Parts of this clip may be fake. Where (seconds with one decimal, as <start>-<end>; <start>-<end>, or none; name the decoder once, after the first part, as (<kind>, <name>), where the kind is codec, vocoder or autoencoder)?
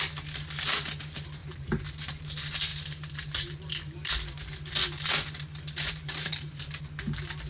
1.4-2.3 (vocoder, BigVGAN v2); 2.7-3.7; 4.8-6.8